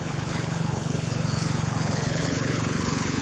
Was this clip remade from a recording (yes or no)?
yes